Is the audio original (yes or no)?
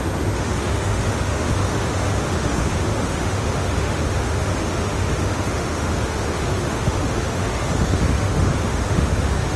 no